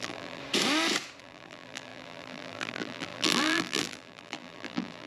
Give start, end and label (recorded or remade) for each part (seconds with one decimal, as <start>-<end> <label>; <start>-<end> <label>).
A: 0.0-0.4 remade; 0.4-1.2 recorded; 1.2-5.1 remade